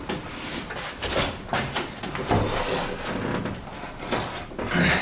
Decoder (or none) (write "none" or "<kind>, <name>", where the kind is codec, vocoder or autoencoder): none